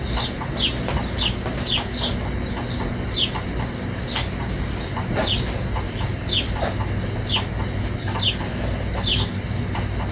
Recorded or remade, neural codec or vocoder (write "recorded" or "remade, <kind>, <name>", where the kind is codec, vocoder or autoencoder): recorded